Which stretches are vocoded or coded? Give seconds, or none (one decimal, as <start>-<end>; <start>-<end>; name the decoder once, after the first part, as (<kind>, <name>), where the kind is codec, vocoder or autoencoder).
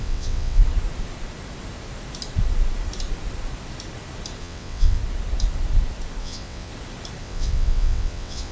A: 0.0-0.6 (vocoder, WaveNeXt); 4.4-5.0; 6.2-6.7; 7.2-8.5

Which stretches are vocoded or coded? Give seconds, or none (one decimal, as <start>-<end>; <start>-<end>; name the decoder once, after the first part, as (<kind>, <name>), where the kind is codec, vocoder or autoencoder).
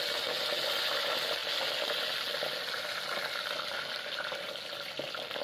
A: none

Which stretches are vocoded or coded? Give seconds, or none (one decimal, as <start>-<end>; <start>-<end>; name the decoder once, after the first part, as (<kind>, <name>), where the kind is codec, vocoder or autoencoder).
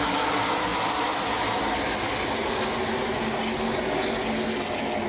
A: none